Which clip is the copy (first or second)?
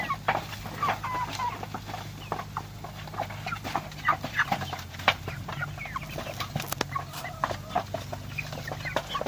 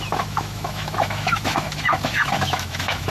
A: second